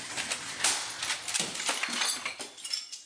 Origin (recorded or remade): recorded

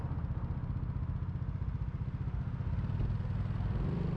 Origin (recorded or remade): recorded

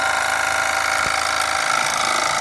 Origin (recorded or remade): recorded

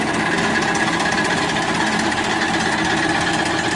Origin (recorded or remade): recorded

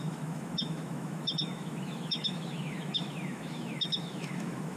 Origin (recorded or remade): remade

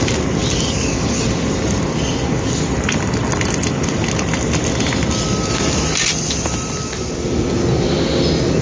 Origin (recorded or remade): recorded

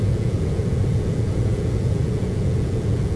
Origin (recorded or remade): remade